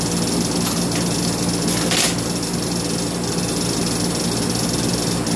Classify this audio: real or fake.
real